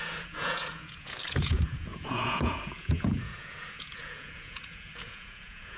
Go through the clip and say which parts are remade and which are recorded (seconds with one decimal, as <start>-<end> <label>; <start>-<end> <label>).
0.0-5.8 remade